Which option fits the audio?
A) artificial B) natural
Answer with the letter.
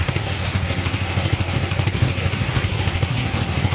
A